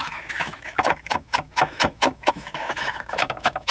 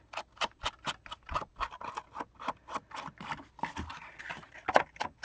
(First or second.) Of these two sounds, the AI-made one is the first